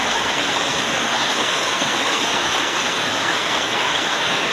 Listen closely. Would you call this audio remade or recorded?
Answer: remade